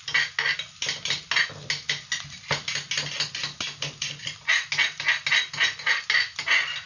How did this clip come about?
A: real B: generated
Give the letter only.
A